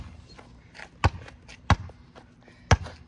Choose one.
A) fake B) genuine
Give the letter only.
B